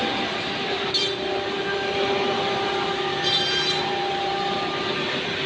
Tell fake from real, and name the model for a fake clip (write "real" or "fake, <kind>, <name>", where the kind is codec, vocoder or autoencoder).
fake, vocoder, BigVGAN v2